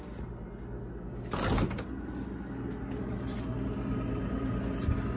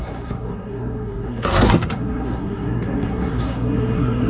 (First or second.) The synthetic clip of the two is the second